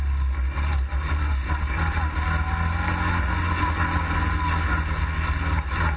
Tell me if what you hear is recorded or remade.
recorded